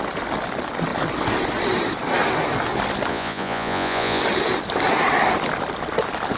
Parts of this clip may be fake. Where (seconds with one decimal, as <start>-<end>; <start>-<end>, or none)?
3.1-4.2